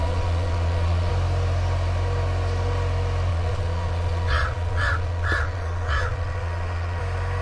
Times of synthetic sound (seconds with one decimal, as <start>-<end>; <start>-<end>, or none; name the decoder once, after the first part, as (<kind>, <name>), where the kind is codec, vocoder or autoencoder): 0.0-1.1 (vocoder, Vocos); 3.3-7.0